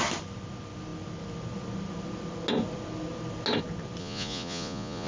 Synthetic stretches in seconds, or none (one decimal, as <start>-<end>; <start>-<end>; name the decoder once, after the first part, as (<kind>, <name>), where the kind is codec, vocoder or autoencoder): 4.0-5.1 (vocoder, Vocos)